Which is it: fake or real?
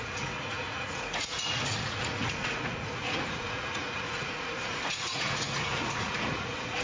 fake